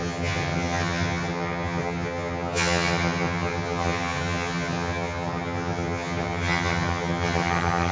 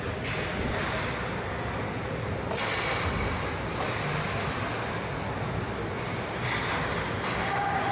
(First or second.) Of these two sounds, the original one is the second